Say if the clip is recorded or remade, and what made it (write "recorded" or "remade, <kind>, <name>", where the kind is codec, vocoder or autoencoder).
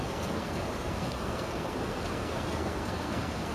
remade, codec, SNAC